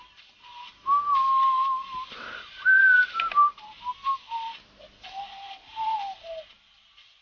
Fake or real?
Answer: real